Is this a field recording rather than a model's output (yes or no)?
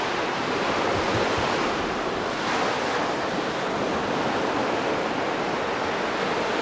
yes